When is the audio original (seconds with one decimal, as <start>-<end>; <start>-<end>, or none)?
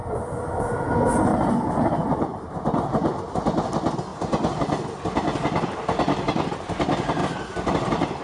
0.9-1.3; 3.1-8.2